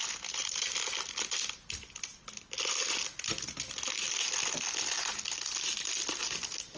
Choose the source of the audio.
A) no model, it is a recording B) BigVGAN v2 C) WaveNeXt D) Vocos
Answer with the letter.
A